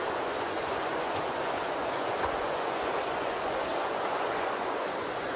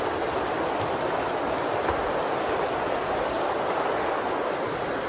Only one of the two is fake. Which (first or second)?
first